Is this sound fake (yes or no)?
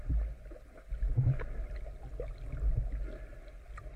no